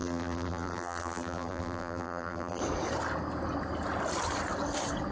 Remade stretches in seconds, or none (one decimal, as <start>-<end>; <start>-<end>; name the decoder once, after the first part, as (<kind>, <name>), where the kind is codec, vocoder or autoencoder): 0.0-2.6 (vocoder, BigVGAN v2)